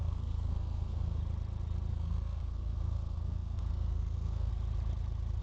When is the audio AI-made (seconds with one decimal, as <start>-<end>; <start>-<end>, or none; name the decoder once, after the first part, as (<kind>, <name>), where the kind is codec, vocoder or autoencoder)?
0.0-1.2 (codec, SNAC); 1.9-4.5